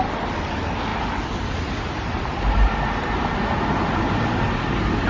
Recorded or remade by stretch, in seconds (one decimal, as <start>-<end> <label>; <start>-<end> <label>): 0.0-5.1 recorded